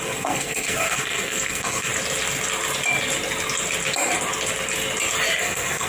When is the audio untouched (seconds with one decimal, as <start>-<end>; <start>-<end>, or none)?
1.9-5.4